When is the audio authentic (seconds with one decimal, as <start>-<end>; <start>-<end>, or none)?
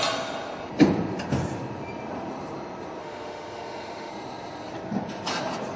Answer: 0.0-3.0; 4.1-5.8